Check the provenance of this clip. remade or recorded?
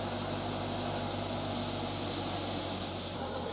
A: recorded